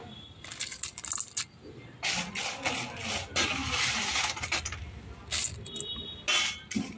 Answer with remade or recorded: recorded